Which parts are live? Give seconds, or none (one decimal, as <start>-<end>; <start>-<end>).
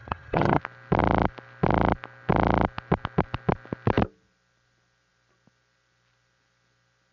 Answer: 0.6-7.1